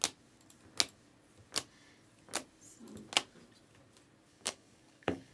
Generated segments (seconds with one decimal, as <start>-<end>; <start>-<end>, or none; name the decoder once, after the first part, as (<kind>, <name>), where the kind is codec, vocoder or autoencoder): 4.3-5.3 (codec, DAC)